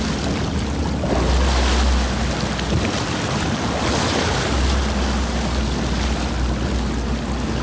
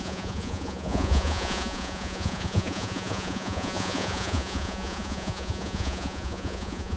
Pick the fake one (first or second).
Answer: second